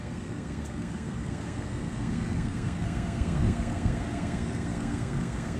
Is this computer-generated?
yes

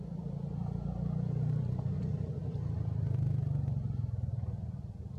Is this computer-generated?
no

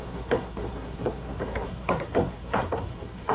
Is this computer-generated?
yes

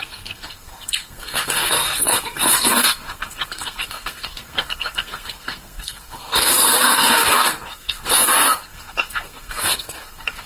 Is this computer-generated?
yes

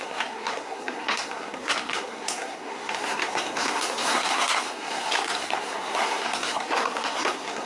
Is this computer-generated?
yes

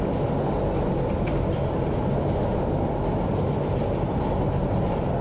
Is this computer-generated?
no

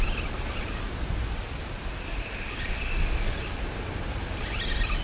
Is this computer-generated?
no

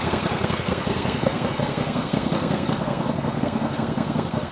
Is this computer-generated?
yes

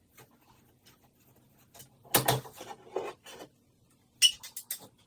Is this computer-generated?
no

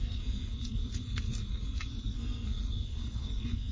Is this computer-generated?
yes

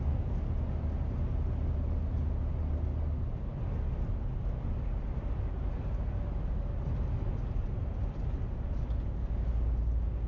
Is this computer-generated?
no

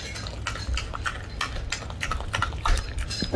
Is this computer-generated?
no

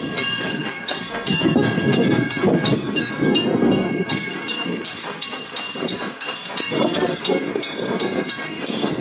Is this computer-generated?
yes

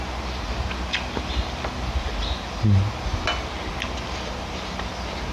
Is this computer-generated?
no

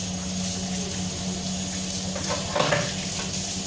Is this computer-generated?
no